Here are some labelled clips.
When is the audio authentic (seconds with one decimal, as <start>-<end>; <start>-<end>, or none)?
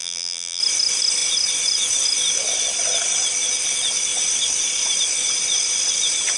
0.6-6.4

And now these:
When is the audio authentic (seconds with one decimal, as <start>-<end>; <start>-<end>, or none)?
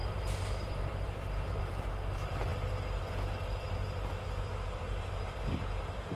1.6-6.2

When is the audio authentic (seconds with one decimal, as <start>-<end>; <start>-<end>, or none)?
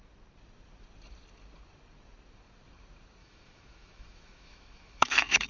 0.0-3.2